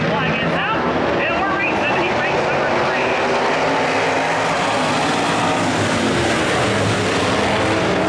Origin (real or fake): real